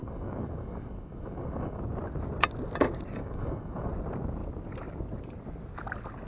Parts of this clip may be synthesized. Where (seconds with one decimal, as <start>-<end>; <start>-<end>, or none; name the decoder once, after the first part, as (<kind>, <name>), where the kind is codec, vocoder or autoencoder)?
0.0-1.8 (codec, DAC); 3.2-3.9